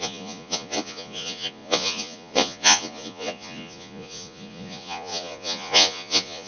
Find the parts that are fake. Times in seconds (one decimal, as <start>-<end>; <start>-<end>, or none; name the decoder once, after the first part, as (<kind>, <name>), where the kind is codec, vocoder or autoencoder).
0.0-6.5 (vocoder, Vocos)